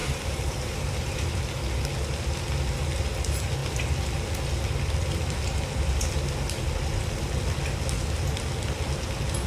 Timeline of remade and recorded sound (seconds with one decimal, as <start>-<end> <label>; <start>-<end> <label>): 0.0-1.4 remade; 1.4-9.5 recorded